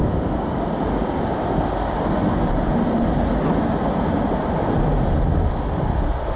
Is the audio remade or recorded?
recorded